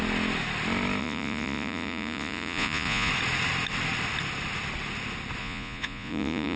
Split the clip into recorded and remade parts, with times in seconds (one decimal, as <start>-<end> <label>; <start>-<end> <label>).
0.0-1.0 recorded; 1.0-3.1 remade; 3.1-5.4 recorded; 5.4-6.6 remade